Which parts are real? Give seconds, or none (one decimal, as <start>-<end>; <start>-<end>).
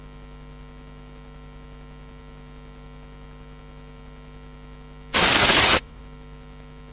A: 0.0-5.4; 6.0-6.9